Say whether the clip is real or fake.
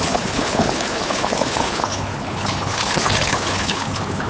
fake